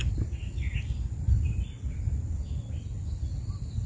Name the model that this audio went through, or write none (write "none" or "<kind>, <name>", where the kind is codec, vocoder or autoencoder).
none